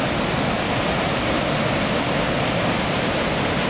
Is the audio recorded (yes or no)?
yes